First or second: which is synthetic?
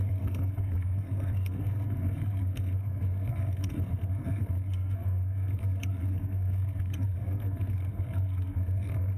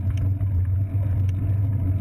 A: first